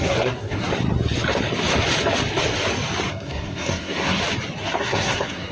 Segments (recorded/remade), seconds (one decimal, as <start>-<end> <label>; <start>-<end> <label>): 0.0-0.7 remade; 0.7-3.1 recorded; 3.1-4.2 remade; 4.2-4.8 recorded; 4.8-5.5 remade